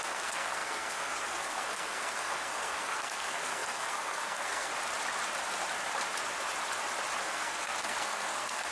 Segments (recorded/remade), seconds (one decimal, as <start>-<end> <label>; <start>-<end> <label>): 0.0-4.7 remade; 4.7-7.2 recorded; 7.2-8.7 remade